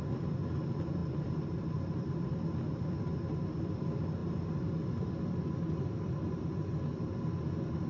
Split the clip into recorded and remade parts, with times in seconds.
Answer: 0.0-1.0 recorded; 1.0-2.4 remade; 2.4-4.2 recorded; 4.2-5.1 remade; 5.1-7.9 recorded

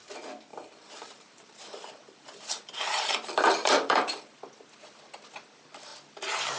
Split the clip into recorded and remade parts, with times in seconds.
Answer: 0.0-0.5 recorded; 0.5-4.4 remade; 4.4-6.6 recorded

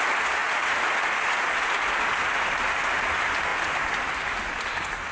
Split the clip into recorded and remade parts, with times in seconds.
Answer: 0.0-5.1 recorded